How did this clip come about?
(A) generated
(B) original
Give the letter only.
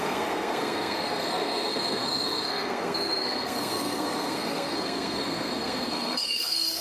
A